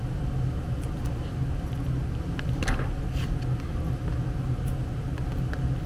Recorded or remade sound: recorded